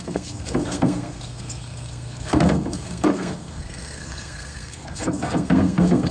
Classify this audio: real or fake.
fake